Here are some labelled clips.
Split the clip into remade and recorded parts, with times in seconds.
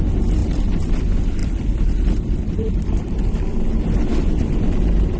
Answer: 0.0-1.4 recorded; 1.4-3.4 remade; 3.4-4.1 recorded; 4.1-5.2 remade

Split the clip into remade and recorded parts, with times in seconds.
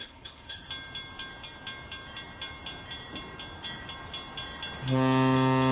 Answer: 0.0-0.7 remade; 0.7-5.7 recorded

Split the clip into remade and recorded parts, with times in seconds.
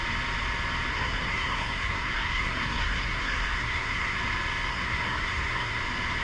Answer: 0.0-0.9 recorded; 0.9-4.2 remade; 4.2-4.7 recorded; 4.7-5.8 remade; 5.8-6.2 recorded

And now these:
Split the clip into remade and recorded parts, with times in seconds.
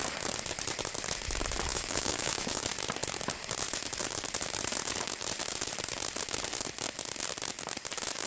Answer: 0.0-1.7 recorded; 1.7-2.6 remade; 2.6-8.3 recorded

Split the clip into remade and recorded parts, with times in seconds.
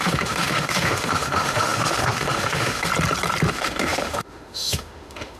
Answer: 0.0-2.9 remade; 2.9-3.5 recorded; 3.5-5.4 remade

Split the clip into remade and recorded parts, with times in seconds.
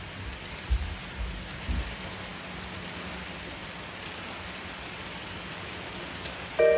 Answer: 0.0-6.8 recorded